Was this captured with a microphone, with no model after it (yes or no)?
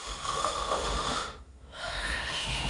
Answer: no